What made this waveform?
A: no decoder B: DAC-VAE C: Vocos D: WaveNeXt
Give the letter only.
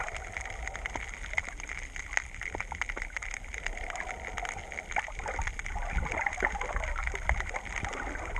A